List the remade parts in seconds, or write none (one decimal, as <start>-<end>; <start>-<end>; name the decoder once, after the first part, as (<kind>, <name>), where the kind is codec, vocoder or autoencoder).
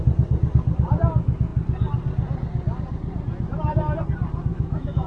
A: 4.5-5.1 (autoencoder, DAC-VAE)